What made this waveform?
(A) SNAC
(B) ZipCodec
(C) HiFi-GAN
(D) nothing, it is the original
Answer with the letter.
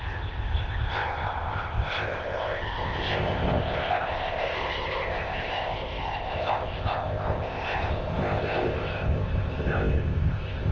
B